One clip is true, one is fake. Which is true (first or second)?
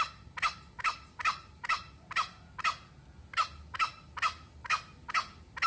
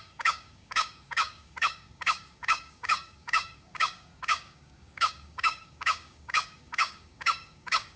first